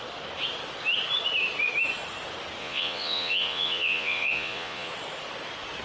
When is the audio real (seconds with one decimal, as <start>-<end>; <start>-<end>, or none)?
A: 0.0-2.6; 4.9-5.8